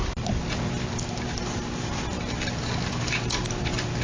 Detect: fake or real real